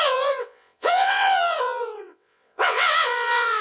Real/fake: fake